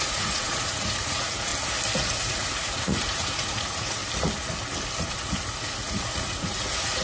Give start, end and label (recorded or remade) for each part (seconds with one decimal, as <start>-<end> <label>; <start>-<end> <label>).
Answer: 0.0-1.5 remade; 1.5-2.2 recorded; 2.2-4.0 remade; 4.0-5.0 recorded; 5.0-7.0 remade